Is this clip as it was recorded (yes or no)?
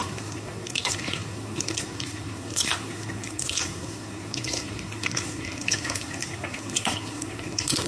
no